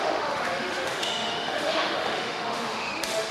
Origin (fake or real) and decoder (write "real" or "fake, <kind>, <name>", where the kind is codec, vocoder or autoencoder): fake, autoencoder, DAC-VAE